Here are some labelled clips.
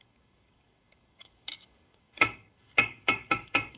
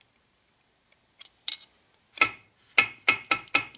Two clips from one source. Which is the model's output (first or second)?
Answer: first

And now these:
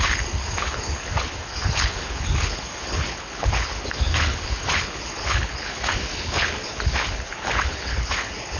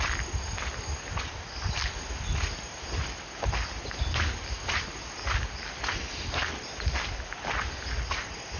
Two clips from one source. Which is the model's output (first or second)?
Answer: first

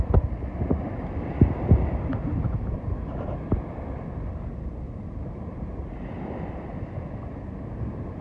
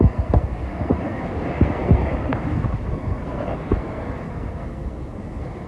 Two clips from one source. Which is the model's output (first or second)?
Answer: second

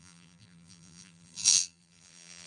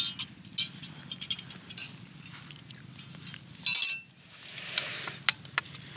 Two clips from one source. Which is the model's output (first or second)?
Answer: first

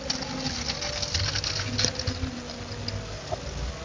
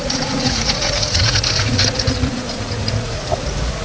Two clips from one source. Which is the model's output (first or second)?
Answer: second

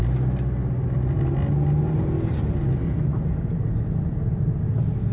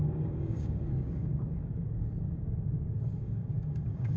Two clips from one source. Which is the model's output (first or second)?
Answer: second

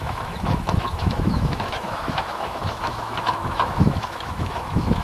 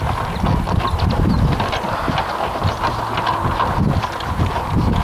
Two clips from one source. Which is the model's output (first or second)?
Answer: first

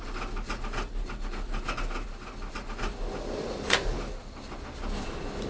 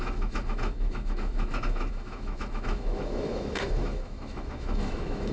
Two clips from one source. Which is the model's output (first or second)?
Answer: second